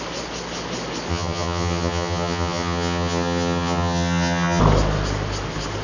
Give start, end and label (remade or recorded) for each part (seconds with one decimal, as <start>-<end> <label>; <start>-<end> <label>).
0.0-1.1 recorded; 1.1-4.6 remade; 4.6-5.8 recorded